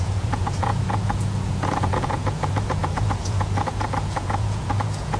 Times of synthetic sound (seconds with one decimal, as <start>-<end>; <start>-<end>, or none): 0.0-5.2